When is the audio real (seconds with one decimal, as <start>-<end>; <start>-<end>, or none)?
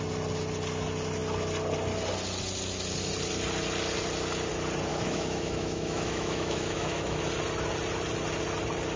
0.0-4.9; 7.2-9.0